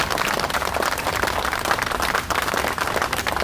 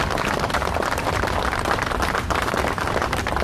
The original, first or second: first